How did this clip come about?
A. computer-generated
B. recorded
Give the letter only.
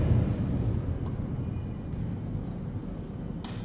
B